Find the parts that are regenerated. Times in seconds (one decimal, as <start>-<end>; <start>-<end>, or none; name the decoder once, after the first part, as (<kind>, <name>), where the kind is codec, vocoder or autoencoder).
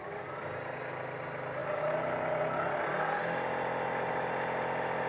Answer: none